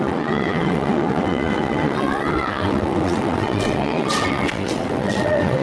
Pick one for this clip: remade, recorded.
remade